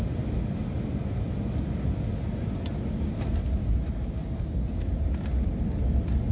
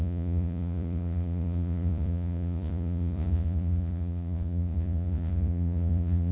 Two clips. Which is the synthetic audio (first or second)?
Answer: second